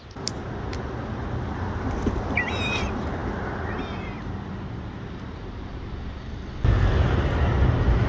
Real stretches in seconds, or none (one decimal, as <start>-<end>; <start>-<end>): 0.0-8.1